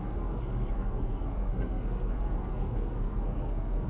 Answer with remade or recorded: remade